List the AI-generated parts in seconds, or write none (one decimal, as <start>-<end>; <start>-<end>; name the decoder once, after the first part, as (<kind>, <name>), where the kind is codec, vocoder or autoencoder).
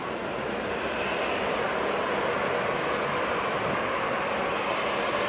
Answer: none